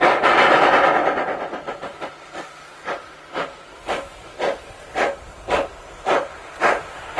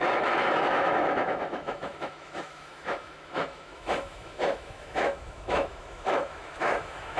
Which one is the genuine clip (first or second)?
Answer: first